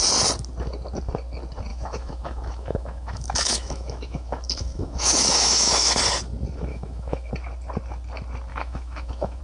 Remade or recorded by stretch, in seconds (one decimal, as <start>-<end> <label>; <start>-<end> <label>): 0.0-1.7 recorded; 1.7-6.0 remade; 6.0-6.7 recorded; 6.7-7.3 remade; 7.3-8.5 recorded; 8.5-9.4 remade